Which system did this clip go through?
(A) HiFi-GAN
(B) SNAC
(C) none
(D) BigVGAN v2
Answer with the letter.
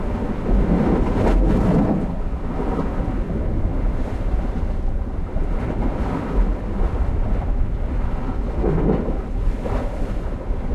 C